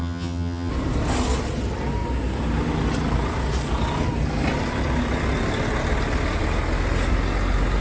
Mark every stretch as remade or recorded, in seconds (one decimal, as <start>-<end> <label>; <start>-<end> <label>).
0.0-0.7 remade; 0.7-7.8 recorded